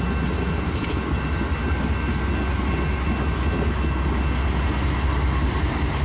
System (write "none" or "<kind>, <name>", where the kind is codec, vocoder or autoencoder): none